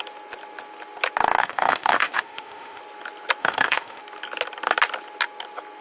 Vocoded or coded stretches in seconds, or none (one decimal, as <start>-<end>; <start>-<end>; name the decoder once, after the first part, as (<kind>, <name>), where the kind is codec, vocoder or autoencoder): 1.4-2.8 (autoencoder, DAC-VAE); 3.4-4.0